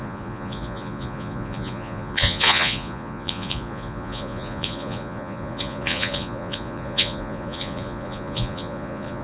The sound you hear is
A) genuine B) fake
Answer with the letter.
B